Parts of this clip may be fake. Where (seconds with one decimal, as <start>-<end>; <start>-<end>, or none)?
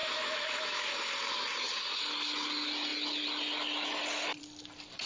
0.0-0.9